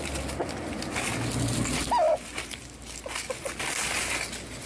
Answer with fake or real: real